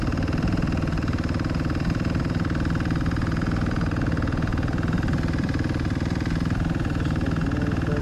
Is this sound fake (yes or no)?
no